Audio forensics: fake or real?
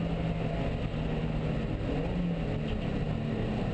real